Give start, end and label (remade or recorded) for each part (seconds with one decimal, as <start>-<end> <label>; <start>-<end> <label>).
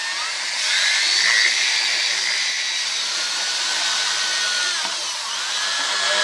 0.0-2.4 recorded; 2.4-4.3 remade; 4.3-6.2 recorded